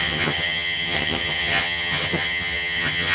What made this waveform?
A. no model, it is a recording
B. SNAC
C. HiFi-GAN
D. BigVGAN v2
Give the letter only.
C